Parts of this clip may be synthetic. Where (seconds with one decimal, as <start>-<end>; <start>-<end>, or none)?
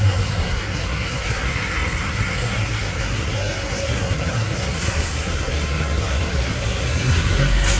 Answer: 0.0-7.8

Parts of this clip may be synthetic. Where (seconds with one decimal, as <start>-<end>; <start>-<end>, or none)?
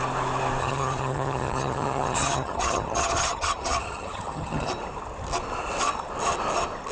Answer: 0.6-4.7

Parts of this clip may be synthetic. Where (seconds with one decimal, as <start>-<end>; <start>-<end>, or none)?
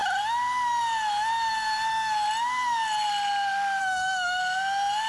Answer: 3.8-4.4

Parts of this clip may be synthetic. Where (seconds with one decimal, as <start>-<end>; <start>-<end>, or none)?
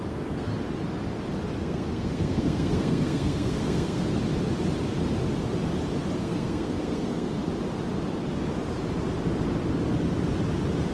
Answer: 0.0-0.5; 1.6-4.2; 6.2-7.4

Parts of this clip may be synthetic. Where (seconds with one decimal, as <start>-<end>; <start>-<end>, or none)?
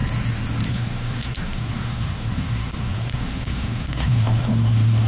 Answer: 0.7-5.1